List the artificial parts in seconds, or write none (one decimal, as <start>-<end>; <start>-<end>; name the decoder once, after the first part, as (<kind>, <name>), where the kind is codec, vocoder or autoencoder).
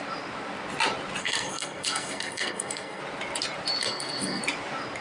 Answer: 1.2-3.0 (codec, SNAC); 3.8-4.4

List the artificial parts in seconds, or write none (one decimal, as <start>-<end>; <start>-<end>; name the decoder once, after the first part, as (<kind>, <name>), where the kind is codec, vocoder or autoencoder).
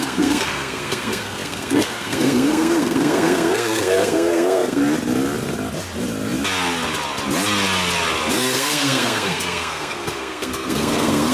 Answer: 0.0-4.8 (codec, SNAC); 8.3-11.3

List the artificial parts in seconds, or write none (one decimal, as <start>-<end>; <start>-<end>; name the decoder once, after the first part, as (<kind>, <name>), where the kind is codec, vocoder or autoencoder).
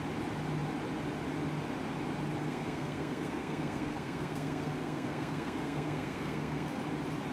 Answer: 2.4-6.8 (codec, SNAC)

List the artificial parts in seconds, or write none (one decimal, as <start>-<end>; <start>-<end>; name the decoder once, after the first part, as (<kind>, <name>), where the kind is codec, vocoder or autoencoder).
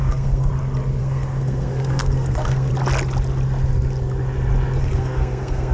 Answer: 0.0-0.5 (codec, SNAC); 1.0-2.7; 4.8-5.7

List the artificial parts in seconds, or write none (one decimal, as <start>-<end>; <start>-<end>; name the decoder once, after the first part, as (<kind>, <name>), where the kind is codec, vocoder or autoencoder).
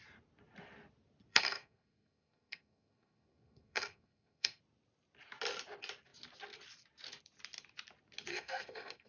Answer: 1.3-4.6 (codec, SNAC); 8.3-9.1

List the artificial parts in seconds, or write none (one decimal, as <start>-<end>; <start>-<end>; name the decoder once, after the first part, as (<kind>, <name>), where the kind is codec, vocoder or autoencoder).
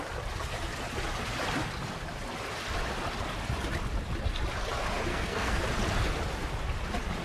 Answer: 5.1-5.6 (codec, SNAC)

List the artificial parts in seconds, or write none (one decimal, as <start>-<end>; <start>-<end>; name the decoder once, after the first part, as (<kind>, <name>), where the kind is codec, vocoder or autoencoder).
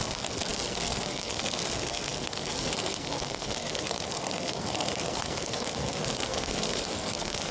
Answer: 0.0-7.5 (codec, SNAC)